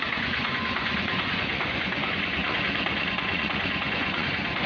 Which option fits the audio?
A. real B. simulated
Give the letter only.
B